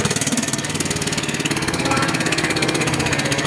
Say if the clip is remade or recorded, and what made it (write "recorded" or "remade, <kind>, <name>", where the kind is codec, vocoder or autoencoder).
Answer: remade, codec, SNAC